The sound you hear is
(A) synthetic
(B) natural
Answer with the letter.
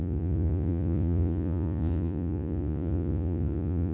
A